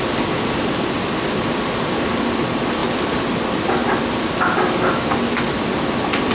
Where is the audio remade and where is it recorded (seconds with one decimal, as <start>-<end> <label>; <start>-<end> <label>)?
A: 0.0-6.3 recorded